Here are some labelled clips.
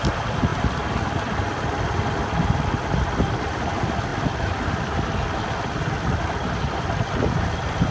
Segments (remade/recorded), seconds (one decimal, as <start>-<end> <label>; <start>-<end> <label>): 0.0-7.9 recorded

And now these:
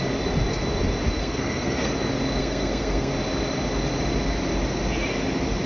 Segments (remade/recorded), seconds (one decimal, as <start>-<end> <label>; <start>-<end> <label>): 0.0-1.2 recorded; 1.2-1.9 remade; 1.9-2.4 recorded; 2.4-3.1 remade; 3.1-5.7 recorded

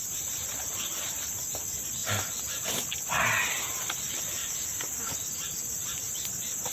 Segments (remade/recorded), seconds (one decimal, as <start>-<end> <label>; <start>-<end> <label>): 0.0-6.7 recorded